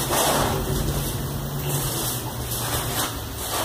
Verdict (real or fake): real